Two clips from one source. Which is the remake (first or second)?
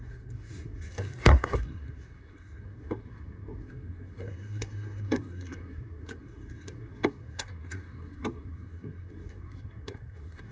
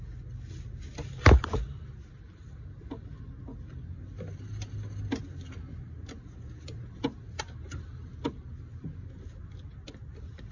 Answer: first